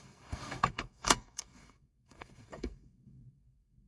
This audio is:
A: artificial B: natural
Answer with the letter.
A